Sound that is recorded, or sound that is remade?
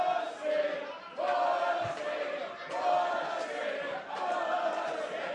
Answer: recorded